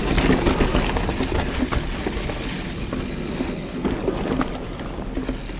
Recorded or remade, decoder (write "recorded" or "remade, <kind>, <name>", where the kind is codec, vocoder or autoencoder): recorded